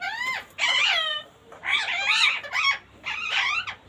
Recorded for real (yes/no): no